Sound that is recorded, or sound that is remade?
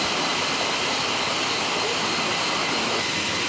recorded